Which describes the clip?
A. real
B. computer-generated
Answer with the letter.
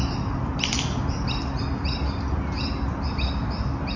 A